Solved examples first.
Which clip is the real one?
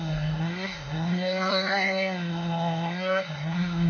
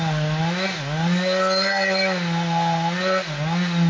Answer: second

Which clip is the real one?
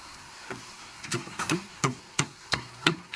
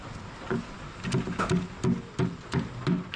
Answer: second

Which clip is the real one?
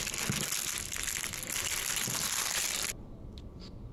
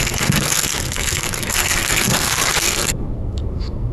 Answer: first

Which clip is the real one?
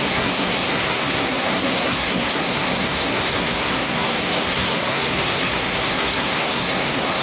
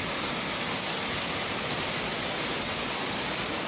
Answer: second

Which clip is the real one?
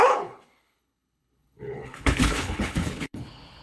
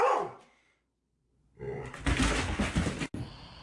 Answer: second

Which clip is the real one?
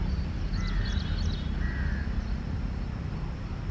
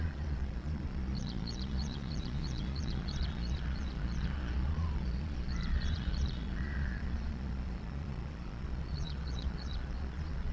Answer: first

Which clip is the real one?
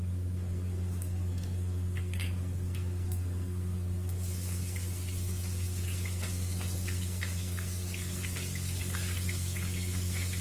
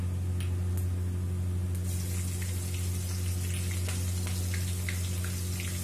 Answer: second